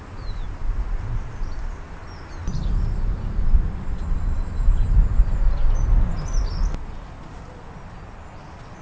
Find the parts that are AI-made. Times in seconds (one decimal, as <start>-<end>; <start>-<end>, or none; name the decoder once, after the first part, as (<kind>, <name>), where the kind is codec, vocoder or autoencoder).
none